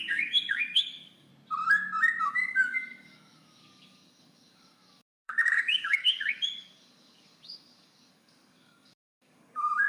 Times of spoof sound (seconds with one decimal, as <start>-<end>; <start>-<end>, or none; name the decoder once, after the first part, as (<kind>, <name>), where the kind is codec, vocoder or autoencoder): 0.0-1.3 (codec, DAC); 2.2-9.9